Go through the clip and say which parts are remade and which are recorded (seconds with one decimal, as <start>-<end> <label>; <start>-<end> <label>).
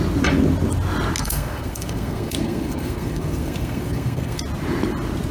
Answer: 0.0-1.2 recorded; 1.2-4.4 remade; 4.4-5.3 recorded